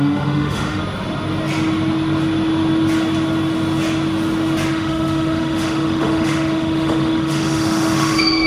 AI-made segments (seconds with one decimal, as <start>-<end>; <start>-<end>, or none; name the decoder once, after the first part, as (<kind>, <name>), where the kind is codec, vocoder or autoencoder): 0.0-0.8 (autoencoder, DAC-VAE); 4.7-8.5